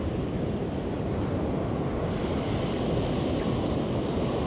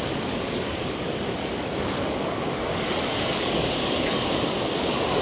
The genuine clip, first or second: first